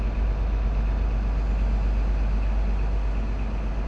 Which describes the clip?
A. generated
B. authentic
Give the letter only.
B